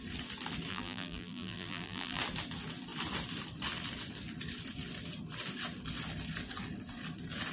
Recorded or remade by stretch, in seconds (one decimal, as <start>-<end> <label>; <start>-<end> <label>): 0.0-0.7 recorded; 0.7-2.2 remade; 2.2-7.5 recorded